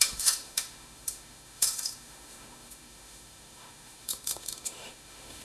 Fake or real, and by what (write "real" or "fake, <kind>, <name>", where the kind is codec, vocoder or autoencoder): fake, autoencoder, DAC-VAE